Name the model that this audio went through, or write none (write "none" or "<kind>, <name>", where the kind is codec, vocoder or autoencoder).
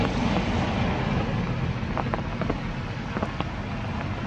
none